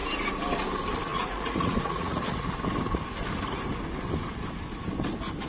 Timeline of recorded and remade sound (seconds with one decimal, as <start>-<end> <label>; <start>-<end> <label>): 0.0-1.1 recorded; 1.1-2.5 remade; 2.5-5.5 recorded